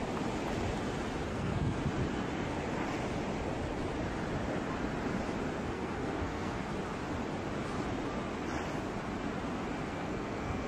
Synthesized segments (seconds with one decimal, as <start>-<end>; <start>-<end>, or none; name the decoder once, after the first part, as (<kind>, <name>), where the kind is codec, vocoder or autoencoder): 1.3-1.8 (codec, SNAC); 5.6-6.7; 9.8-10.7